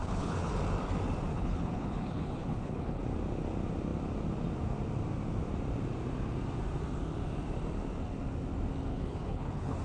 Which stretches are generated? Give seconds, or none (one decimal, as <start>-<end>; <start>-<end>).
0.0-0.5; 1.3-3.0; 8.9-9.8